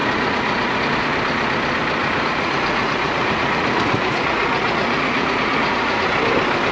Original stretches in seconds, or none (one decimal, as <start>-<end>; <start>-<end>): 0.8-2.0; 6.0-6.7